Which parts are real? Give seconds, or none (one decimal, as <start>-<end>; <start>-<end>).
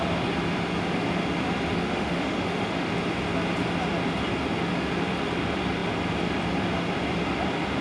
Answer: 0.0-1.7; 2.9-7.8